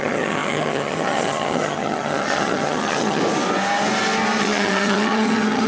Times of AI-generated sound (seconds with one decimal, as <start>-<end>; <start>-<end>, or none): 0.0-3.2; 4.4-5.7